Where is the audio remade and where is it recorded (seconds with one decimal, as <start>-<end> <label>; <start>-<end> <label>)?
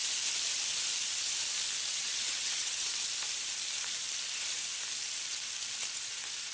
0.0-1.9 recorded; 1.9-2.9 remade; 2.9-6.5 recorded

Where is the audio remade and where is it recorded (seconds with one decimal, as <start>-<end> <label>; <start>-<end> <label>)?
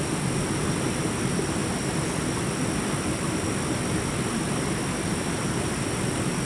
0.0-6.5 recorded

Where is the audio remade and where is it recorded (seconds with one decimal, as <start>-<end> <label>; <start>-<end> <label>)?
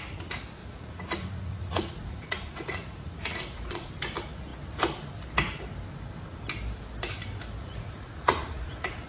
0.0-0.6 recorded; 0.6-3.9 remade; 3.9-7.6 recorded; 7.6-9.1 remade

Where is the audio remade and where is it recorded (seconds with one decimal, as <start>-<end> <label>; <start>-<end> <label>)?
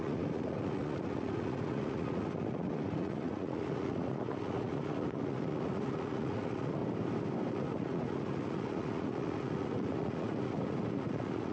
0.0-6.8 remade; 6.8-7.5 recorded; 7.5-11.5 remade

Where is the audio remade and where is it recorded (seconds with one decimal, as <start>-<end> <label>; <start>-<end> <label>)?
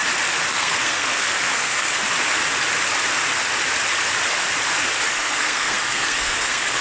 0.0-0.5 recorded; 0.5-2.0 remade; 2.0-5.1 recorded; 5.1-6.8 remade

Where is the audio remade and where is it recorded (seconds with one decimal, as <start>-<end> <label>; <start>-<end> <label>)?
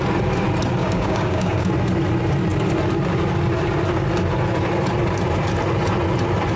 0.0-0.8 recorded; 0.8-1.7 remade; 1.7-6.6 recorded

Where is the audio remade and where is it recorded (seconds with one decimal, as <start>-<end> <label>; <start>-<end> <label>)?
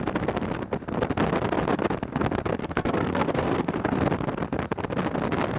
0.0-2.6 recorded; 2.6-4.0 remade; 4.0-5.6 recorded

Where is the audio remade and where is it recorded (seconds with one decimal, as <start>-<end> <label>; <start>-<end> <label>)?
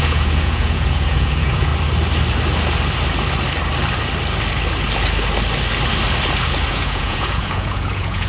0.0-1.7 remade; 1.7-6.7 recorded; 6.7-8.3 remade